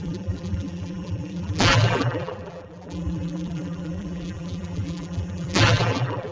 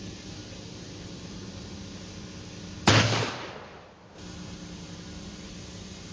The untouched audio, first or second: second